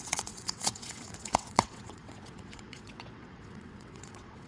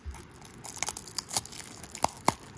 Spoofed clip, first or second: first